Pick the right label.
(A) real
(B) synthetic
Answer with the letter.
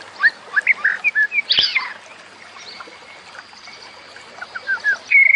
A